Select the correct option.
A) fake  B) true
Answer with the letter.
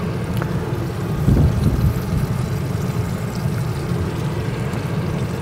B